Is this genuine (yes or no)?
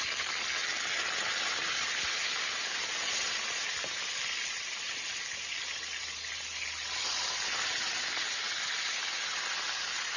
yes